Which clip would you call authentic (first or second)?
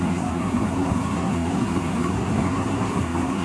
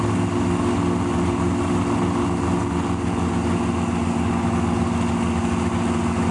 second